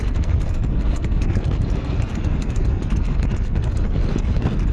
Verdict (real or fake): fake